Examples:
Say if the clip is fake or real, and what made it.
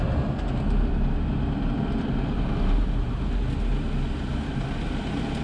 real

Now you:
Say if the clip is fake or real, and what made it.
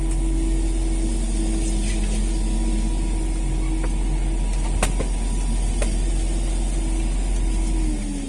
real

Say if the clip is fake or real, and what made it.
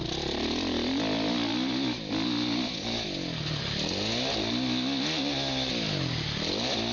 real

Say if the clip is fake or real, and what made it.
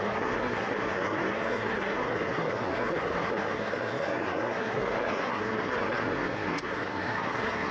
fake, codec, SNAC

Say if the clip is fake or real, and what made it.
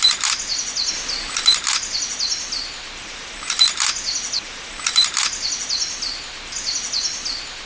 real